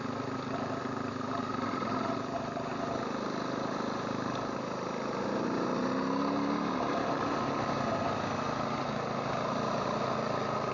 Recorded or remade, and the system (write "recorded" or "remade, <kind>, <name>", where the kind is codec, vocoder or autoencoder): recorded